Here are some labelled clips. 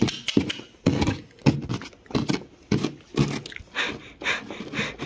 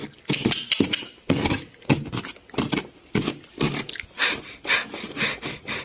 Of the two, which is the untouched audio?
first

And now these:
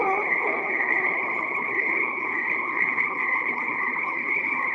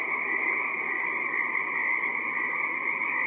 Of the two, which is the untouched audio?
second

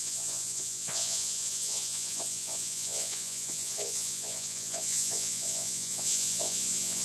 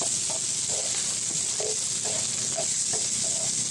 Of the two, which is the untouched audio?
second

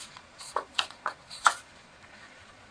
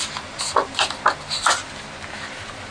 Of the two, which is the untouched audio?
second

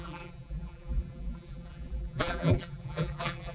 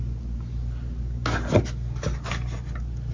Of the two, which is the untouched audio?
second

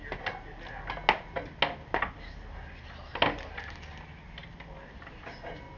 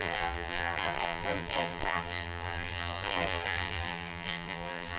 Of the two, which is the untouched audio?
first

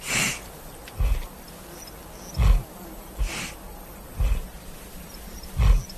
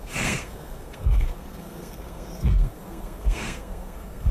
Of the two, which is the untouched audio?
first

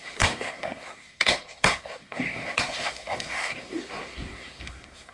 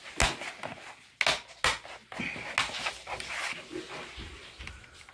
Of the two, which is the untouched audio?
second